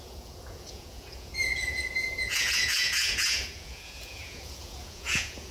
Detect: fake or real fake